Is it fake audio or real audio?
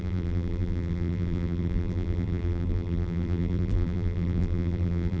fake